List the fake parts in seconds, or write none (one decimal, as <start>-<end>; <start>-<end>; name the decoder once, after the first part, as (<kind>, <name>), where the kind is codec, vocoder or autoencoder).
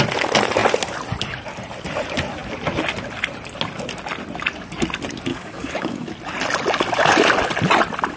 5.3-6.1 (codec, DAC)